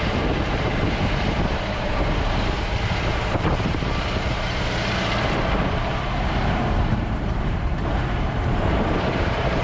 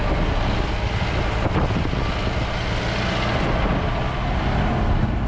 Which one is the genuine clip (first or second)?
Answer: second